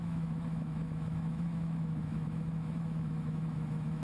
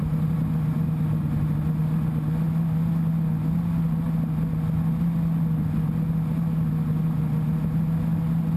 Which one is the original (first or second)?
second